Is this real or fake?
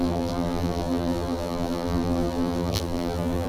fake